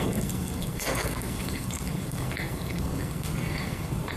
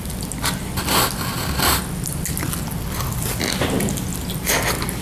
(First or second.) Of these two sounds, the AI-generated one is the first